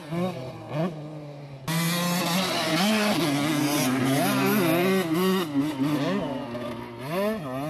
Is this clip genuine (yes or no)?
yes